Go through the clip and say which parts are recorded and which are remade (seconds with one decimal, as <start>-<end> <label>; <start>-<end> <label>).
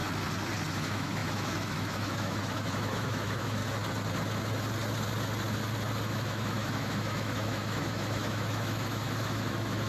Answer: 0.0-0.7 recorded; 0.7-3.6 remade; 3.6-6.0 recorded; 6.0-9.9 remade